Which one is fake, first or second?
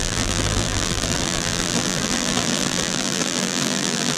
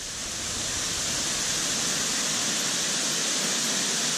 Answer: first